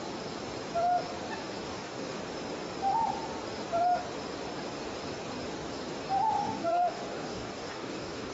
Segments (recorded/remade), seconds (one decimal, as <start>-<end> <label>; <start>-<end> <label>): 0.0-1.4 recorded; 1.4-2.2 remade; 2.2-6.4 recorded; 6.4-8.3 remade